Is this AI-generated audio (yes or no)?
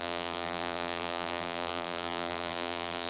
yes